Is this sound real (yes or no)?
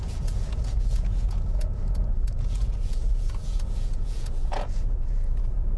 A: no